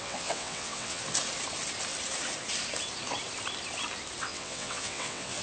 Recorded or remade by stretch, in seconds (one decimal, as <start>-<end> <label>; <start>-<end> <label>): 0.0-1.0 remade; 1.0-4.2 recorded; 4.2-5.4 remade